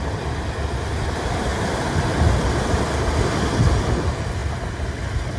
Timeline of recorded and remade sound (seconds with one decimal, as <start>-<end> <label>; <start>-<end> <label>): 0.0-5.4 recorded